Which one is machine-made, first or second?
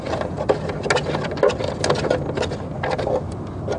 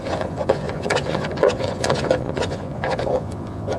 second